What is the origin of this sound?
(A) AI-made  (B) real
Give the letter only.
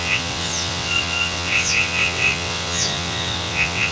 A